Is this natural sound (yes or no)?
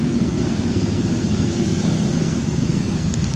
no